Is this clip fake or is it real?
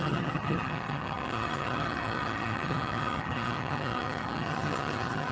fake